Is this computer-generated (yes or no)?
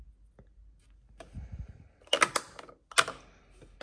no